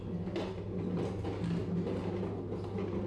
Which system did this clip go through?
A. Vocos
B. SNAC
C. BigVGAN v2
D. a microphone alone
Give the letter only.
D